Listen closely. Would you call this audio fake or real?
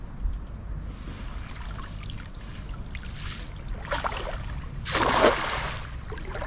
real